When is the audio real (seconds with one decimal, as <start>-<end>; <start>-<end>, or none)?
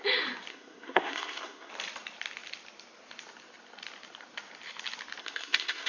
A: 0.0-0.5; 1.7-5.2